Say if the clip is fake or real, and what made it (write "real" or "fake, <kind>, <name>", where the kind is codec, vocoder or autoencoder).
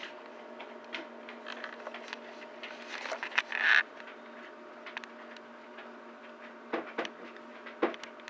real